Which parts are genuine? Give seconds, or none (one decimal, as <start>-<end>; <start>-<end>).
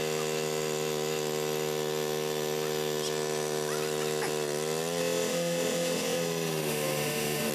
0.0-5.0